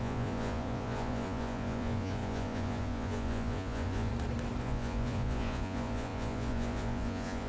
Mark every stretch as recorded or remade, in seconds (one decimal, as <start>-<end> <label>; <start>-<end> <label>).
0.0-4.1 remade; 4.1-4.6 recorded; 4.6-7.5 remade